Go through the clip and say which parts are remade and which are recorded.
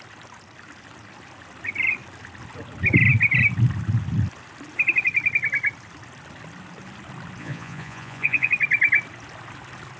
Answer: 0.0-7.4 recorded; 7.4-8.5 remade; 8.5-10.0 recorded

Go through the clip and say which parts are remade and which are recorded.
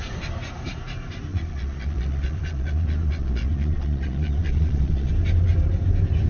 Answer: 0.0-1.3 recorded; 1.3-5.1 remade; 5.1-6.3 recorded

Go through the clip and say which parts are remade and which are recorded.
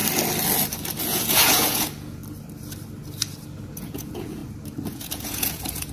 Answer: 0.0-1.0 recorded; 1.0-2.2 remade; 2.2-3.7 recorded; 3.7-4.4 remade; 4.4-4.9 recorded; 4.9-5.9 remade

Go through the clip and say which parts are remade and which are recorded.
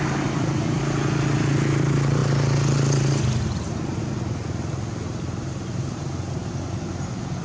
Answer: 0.0-7.4 recorded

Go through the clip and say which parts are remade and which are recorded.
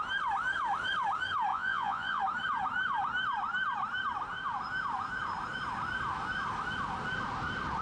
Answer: 0.0-1.5 recorded; 1.5-2.2 remade; 2.2-7.8 recorded